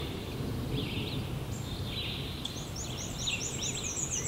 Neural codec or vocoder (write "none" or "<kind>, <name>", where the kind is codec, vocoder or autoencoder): none